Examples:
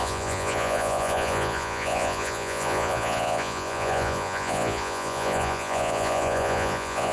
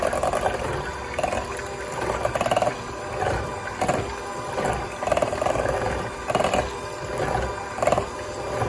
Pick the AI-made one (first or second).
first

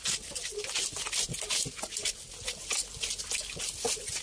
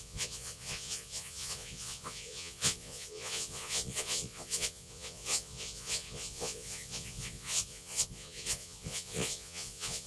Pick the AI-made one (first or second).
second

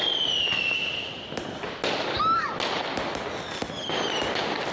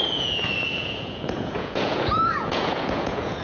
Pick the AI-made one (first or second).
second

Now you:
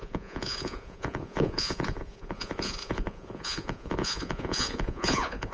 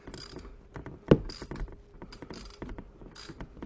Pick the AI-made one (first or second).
first